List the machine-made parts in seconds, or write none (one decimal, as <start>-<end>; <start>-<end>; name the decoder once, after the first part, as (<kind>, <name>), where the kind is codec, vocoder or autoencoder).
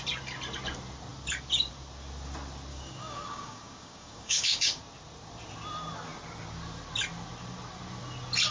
2.7-4.8 (codec, DAC)